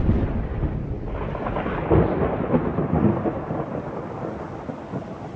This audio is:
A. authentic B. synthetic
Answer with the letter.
A